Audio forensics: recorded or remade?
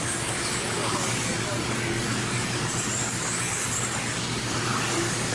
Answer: remade